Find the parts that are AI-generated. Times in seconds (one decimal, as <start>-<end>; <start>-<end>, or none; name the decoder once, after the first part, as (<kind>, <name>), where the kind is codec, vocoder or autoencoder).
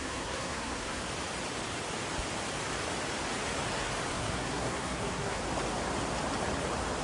0.0-1.1 (codec, SNAC); 4.1-5.4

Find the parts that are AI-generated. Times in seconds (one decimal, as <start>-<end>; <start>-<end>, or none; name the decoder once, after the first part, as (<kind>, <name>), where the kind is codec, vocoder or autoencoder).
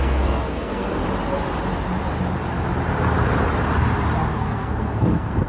0.0-1.0 (codec, SNAC); 4.3-5.5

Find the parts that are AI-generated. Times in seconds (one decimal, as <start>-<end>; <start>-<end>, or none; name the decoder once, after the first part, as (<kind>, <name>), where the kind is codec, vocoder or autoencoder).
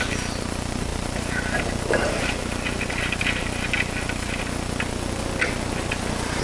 none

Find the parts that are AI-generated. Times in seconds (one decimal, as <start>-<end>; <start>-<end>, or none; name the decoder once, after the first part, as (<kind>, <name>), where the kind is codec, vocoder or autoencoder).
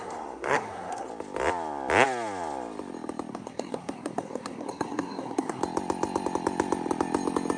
0.0-1.1 (codec, SNAC); 3.3-5.6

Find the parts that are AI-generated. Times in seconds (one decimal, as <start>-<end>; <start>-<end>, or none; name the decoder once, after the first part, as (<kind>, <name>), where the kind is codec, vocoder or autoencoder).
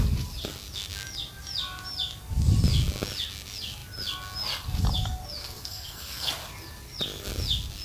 5.4-6.3 (codec, SNAC)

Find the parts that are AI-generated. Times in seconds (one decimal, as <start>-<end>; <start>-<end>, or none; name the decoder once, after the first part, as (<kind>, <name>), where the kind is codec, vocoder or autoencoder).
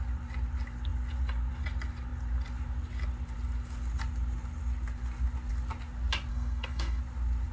6.3-7.0 (codec, SNAC)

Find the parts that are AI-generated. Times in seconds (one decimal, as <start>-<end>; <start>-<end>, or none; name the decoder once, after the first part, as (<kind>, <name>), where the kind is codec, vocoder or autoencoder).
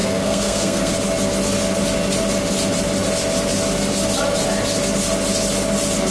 0.0-0.9 (codec, SNAC)